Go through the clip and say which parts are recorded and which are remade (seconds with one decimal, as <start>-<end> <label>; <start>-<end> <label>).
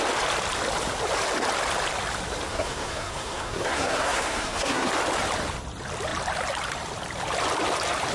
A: 0.0-2.5 recorded; 2.5-4.9 remade; 4.9-8.1 recorded